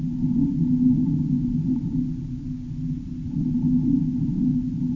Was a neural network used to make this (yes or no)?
no